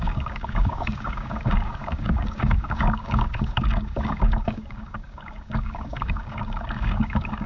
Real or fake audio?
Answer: fake